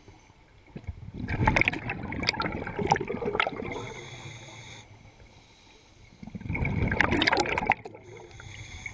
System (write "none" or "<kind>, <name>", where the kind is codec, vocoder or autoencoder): none